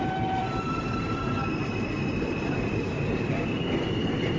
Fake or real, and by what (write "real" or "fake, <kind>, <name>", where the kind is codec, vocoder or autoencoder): fake, vocoder, BigVGAN v2